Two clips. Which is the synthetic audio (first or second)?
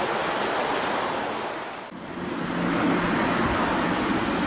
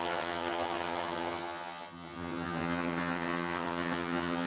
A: second